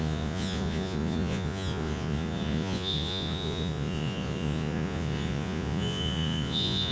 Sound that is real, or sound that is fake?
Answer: fake